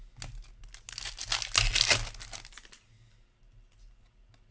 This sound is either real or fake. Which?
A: real